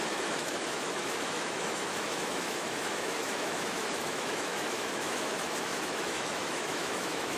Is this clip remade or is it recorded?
remade